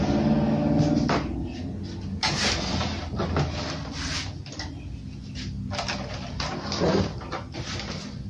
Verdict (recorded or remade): recorded